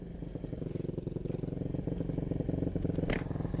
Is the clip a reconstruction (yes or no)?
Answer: no